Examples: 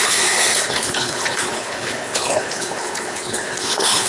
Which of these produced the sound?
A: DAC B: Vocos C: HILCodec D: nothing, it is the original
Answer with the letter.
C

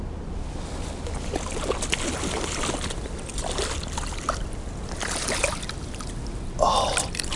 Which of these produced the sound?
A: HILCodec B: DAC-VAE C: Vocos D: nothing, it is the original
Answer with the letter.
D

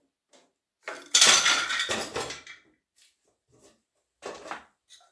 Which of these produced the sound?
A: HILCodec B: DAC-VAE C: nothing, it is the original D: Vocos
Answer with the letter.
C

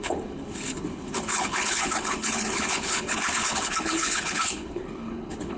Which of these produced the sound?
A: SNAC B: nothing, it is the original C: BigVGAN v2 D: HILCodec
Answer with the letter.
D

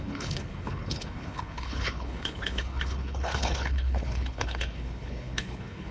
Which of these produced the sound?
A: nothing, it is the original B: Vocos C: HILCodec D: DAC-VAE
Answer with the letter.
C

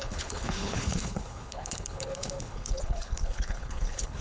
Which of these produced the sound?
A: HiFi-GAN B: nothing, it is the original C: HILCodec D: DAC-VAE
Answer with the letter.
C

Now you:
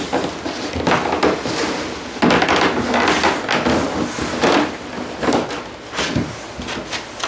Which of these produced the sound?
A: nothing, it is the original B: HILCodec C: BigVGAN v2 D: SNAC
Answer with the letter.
A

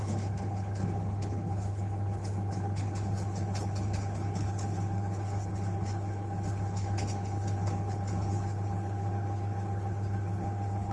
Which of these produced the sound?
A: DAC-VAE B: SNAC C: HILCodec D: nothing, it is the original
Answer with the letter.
C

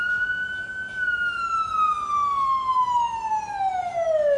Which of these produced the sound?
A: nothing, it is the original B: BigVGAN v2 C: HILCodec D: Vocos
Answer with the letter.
A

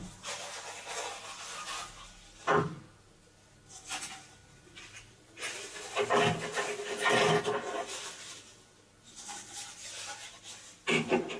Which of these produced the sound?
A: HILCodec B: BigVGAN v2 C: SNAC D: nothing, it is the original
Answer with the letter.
D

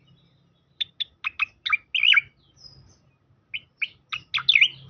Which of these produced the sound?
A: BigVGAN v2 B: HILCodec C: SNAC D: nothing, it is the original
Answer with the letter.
D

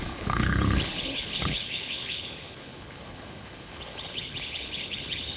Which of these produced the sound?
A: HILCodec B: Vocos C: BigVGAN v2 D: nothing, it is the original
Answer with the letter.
A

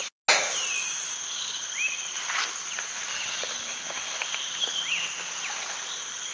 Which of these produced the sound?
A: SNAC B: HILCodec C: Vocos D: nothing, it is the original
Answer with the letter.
D